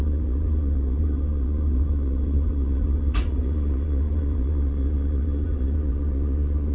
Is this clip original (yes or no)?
no